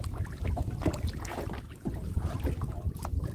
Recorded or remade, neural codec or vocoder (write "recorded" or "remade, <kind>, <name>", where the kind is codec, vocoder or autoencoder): recorded